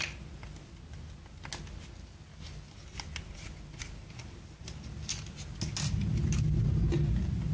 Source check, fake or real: real